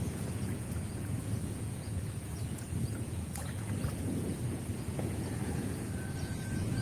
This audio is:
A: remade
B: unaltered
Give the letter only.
A